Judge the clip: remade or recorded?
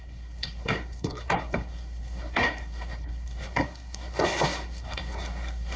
remade